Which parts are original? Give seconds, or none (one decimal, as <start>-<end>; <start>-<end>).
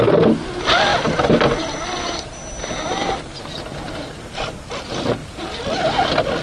0.0-5.2; 5.7-6.4